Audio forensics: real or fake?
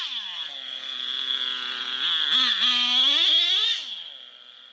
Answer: real